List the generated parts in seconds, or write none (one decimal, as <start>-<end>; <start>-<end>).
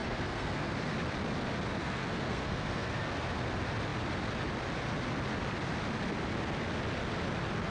0.0-0.7; 1.8-3.1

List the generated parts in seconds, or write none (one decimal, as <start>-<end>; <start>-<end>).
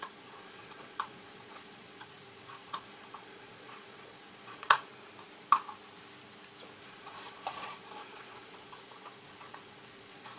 0.0-4.9; 6.8-10.4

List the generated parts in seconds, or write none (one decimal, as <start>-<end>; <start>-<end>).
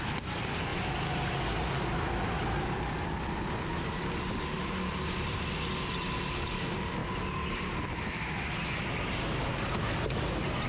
none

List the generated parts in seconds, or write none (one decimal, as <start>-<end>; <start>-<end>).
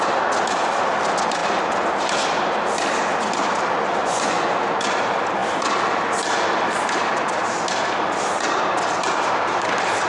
4.0-4.5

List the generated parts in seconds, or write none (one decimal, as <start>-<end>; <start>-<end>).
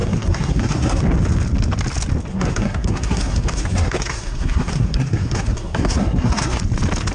0.0-1.0; 2.3-6.6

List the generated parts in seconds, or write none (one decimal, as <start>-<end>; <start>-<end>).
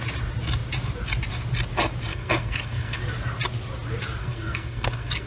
2.1-3.0; 4.2-5.3